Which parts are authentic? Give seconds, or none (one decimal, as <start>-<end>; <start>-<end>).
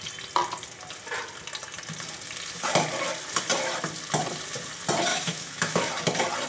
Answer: 0.0-5.1; 5.9-6.5